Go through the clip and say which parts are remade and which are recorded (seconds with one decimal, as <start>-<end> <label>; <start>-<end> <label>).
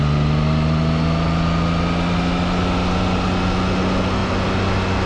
0.0-5.1 recorded